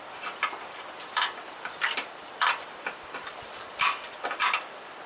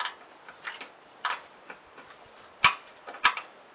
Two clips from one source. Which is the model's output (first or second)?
first